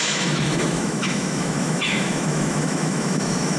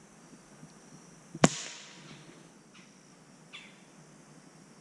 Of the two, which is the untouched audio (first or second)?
second